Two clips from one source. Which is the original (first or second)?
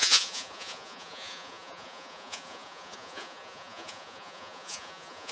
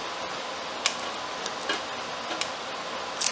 second